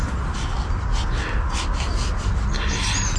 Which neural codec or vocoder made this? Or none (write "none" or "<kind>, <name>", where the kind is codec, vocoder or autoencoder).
none